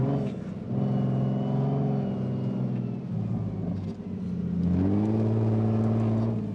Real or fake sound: real